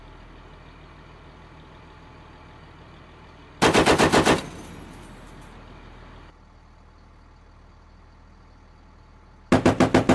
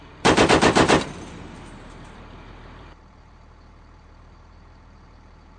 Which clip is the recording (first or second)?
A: first